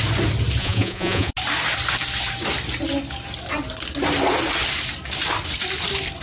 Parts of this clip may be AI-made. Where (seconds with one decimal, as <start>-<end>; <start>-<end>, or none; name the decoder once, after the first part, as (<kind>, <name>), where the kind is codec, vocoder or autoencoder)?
0.6-1.3 (vocoder, Vocos)